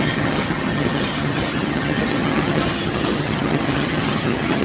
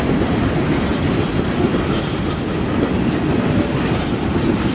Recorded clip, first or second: second